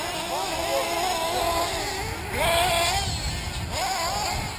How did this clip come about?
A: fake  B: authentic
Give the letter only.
B